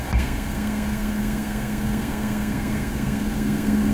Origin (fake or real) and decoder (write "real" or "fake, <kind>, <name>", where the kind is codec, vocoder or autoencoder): fake, codec, SNAC